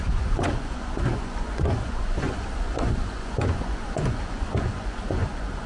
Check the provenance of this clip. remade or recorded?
remade